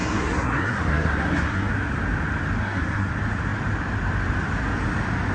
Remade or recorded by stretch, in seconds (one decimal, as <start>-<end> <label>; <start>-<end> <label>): 0.0-1.7 remade; 1.7-2.6 recorded; 2.6-3.1 remade; 3.1-5.3 recorded

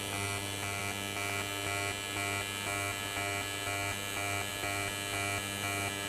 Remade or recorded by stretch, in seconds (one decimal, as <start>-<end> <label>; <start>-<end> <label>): 0.0-6.1 recorded

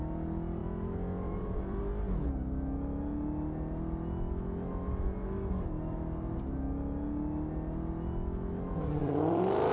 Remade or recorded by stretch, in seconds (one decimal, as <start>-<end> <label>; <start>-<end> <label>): 0.0-0.6 recorded; 0.6-1.8 remade; 1.8-9.0 recorded; 9.0-9.7 remade

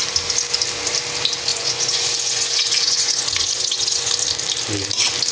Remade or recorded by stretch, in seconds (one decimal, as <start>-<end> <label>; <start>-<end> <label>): 0.0-1.5 recorded; 1.5-4.1 remade; 4.1-5.3 recorded